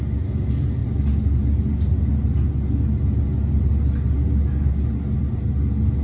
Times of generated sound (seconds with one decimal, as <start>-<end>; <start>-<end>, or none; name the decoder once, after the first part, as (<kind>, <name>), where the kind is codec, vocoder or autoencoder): none